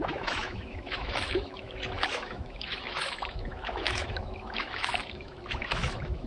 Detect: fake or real fake